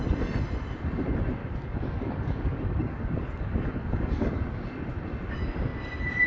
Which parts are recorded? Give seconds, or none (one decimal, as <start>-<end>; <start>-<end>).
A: 0.0-1.4; 4.4-6.3